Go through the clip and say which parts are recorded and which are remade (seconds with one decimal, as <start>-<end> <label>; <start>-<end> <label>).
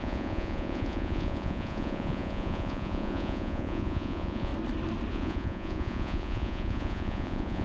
0.0-4.5 remade; 4.5-5.1 recorded; 5.1-7.6 remade